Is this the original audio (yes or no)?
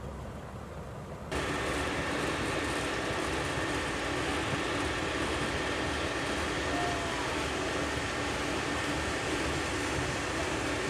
yes